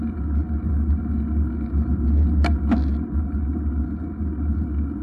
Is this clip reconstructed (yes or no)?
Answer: no